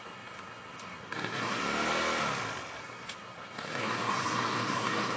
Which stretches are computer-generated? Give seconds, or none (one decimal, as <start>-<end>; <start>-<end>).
0.0-1.6; 2.8-5.2